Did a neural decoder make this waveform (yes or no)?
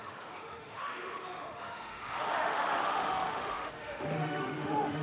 yes